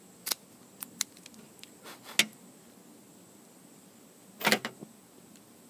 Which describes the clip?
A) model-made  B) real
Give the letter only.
B